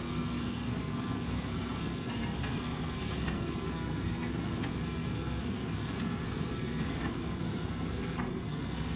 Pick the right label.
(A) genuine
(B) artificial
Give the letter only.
B